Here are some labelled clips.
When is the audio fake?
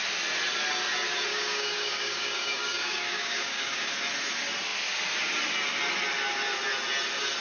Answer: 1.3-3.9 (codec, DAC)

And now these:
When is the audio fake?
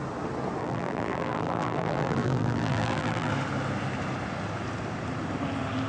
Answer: 0.6-3.3 (vocoder, BigVGAN v2)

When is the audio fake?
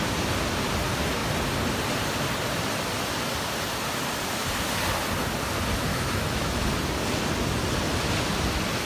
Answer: 5.9-6.6 (autoencoder, DAC-VAE)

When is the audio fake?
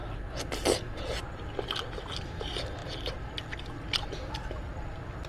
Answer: none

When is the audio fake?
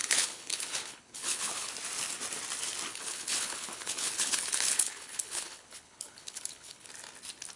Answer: 0.0-1.7 (codec, HILCodec); 2.9-6.9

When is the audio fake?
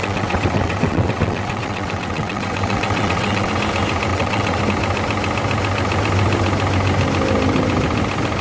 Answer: 0.0-3.5 (vocoder, WaveNeXt); 4.1-4.6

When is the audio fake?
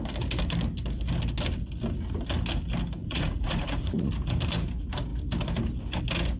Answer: 3.0-4.1 (vocoder, Vocos)